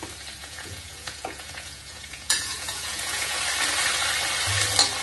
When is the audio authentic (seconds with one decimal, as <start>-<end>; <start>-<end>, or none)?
0.0-0.4; 3.4-5.0